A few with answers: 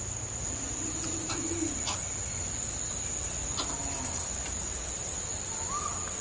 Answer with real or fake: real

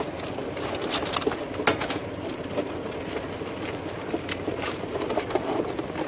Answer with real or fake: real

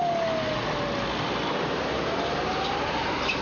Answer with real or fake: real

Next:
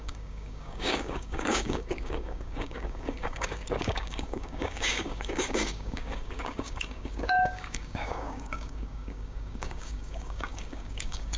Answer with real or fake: fake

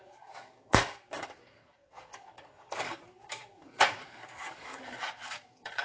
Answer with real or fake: fake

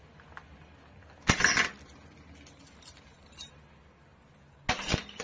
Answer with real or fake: real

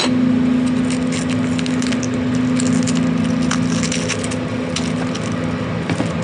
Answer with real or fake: real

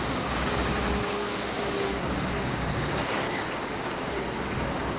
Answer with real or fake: fake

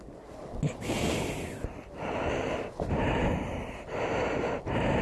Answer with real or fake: real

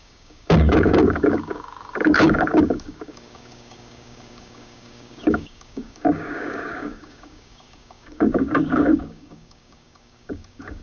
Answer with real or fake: fake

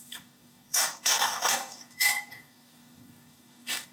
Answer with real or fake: fake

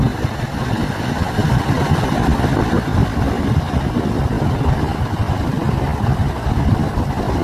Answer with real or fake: real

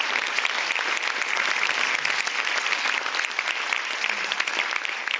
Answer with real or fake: real